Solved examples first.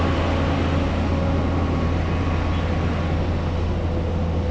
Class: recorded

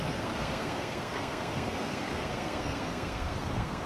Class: remade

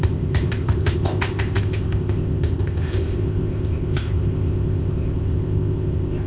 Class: remade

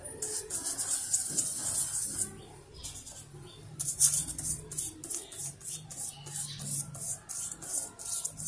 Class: recorded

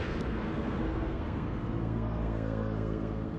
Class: remade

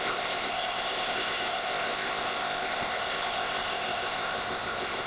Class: remade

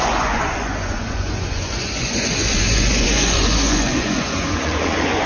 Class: remade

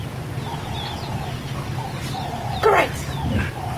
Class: recorded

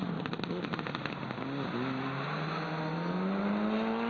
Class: recorded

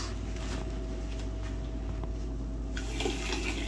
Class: recorded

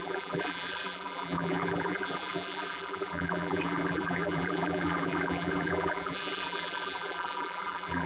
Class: remade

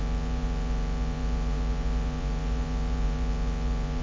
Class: remade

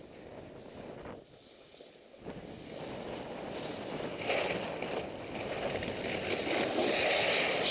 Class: recorded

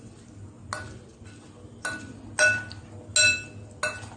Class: recorded